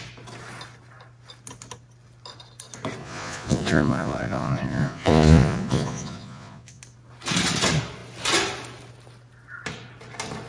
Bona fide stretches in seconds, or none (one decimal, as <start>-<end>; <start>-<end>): 0.0-3.0; 6.8-10.5